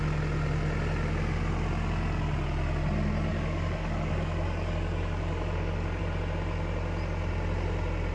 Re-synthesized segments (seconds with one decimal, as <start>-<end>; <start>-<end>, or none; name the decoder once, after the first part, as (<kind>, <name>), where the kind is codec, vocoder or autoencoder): 3.3-6.0 (codec, DAC)